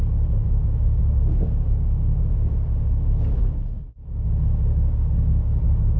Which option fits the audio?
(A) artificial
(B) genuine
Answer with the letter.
A